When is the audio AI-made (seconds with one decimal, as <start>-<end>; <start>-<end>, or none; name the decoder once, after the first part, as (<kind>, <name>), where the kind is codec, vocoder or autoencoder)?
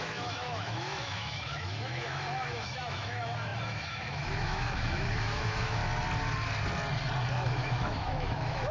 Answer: 0.0-5.8 (autoencoder, DAC-VAE); 7.3-8.7